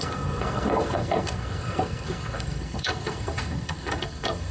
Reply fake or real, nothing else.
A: fake